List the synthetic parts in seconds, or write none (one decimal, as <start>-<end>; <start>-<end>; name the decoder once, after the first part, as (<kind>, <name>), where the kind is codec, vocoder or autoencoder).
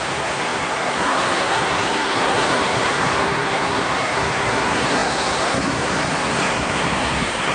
0.0-7.5 (codec, SNAC)